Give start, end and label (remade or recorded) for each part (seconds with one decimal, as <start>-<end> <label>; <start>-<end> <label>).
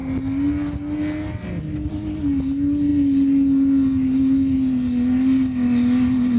0.0-6.4 recorded